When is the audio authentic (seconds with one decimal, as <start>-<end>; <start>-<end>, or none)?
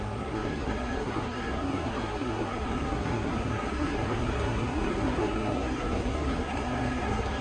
none